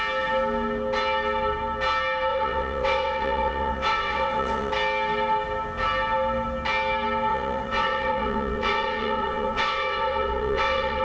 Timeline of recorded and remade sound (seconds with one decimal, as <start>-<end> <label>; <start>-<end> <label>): 0.0-2.3 recorded; 2.3-4.7 remade; 4.7-7.3 recorded; 7.3-11.0 remade